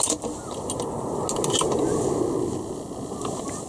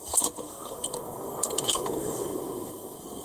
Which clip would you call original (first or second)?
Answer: first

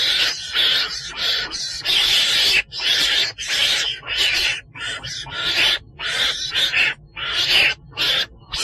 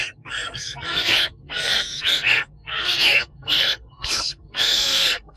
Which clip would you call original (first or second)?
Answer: first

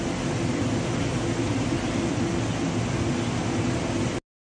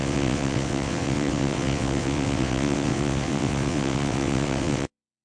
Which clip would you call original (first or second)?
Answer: first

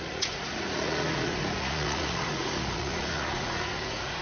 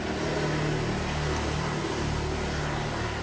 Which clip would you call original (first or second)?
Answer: second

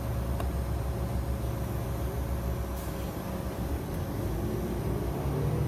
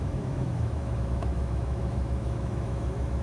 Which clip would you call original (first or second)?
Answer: first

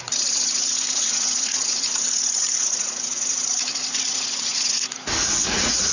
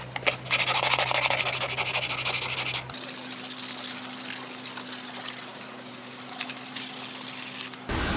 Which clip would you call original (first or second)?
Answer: second